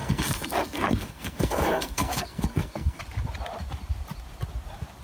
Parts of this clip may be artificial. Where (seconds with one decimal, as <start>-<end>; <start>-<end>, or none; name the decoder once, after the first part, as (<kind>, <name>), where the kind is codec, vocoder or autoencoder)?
0.0-3.0 (codec, SNAC)